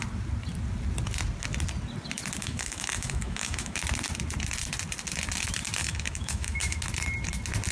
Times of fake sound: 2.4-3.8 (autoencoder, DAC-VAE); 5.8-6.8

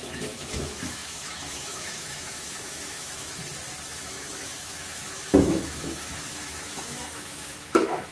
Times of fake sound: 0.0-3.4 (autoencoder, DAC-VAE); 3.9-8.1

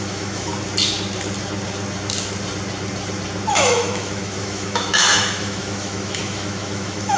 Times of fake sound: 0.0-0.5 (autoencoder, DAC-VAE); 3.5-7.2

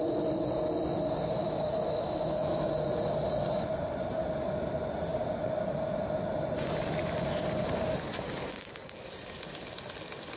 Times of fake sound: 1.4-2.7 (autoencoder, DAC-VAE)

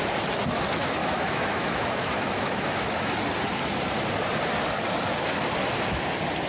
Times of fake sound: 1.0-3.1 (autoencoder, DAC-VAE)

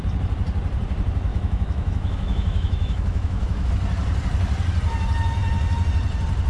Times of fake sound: 1.3-3.7 (autoencoder, DAC-VAE)

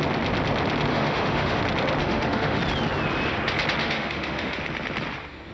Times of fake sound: 0.9-1.6 (autoencoder, DAC-VAE); 2.0-2.6; 3.8-4.6

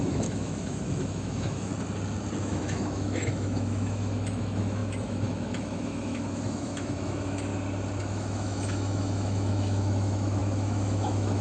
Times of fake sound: 0.0-1.7 (autoencoder, DAC-VAE); 2.4-7.5; 8.0-11.4